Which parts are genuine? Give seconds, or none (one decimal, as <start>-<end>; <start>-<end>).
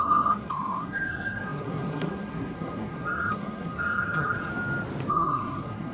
4.5-5.1